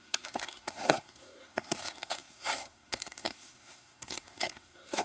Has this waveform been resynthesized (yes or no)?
yes